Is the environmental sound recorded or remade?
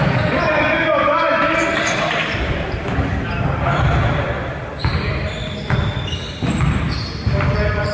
recorded